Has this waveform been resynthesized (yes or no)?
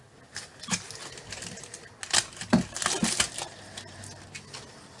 no